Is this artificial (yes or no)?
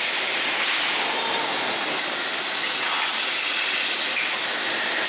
no